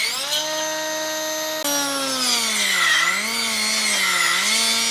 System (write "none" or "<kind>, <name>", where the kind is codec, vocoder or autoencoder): none